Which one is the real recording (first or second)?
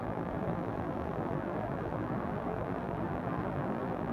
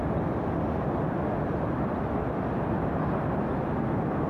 second